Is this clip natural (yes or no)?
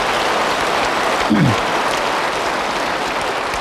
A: yes